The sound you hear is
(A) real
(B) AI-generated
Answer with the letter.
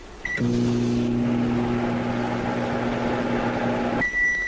A